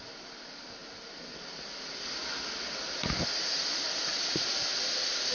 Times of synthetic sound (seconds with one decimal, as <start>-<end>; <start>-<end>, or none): none